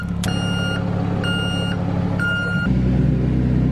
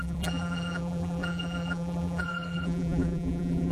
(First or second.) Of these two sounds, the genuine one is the first